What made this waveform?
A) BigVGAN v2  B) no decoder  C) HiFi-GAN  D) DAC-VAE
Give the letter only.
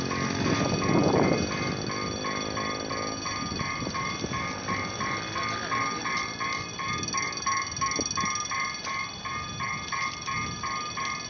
B